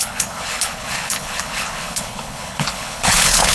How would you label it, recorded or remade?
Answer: remade